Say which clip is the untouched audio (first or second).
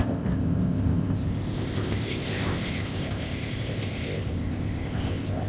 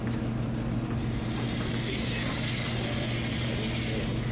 second